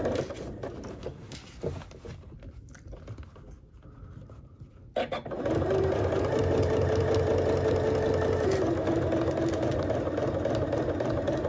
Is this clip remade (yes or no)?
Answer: no